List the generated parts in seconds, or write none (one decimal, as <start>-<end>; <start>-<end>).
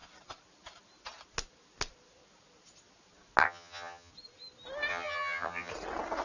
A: 3.4-4.1; 4.9-5.7